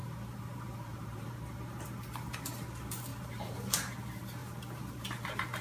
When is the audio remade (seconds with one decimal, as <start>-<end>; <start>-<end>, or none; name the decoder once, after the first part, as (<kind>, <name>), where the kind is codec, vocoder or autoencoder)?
0.0-2.5 (vocoder, BigVGAN v2); 3.1-3.7; 4.4-5.0